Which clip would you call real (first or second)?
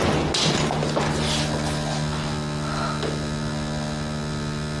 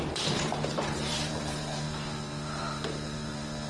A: first